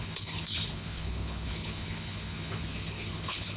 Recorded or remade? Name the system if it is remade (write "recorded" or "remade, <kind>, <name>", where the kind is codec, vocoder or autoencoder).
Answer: remade, codec, HILCodec